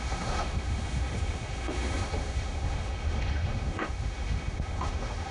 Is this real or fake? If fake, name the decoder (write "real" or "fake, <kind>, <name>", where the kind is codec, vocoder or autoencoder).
fake, autoencoder, DAC-VAE